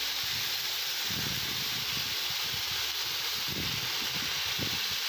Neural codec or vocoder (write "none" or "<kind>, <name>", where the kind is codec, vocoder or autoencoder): none